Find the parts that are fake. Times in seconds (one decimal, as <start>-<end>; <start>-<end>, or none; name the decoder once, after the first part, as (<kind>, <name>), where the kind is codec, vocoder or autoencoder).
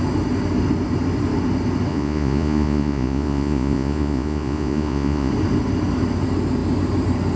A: 1.9-5.3 (vocoder, Vocos)